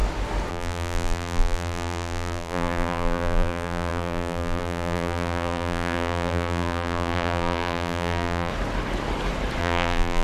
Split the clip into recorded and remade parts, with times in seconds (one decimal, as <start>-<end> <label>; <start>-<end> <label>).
0.0-0.5 recorded; 0.5-8.5 remade; 8.5-9.6 recorded; 9.6-10.2 remade